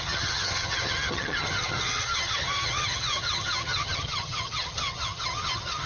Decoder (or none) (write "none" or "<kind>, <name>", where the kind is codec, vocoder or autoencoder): vocoder, HiFi-GAN